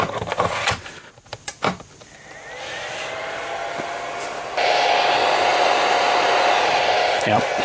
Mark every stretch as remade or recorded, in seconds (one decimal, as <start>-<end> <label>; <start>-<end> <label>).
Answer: 0.0-1.3 recorded; 1.3-3.2 remade; 3.2-5.5 recorded; 5.5-7.6 remade